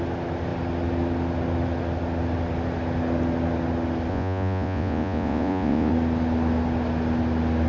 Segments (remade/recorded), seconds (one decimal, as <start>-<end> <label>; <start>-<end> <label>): 0.0-4.1 recorded; 4.1-5.9 remade; 5.9-7.7 recorded